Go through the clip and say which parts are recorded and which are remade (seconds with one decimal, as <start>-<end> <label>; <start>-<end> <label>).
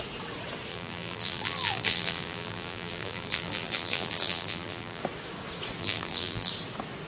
0.0-0.7 recorded; 0.7-5.0 remade; 5.0-5.8 recorded; 5.8-6.5 remade; 6.5-7.1 recorded